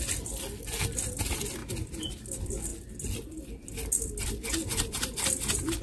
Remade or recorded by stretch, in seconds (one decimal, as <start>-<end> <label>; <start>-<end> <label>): 0.0-5.8 recorded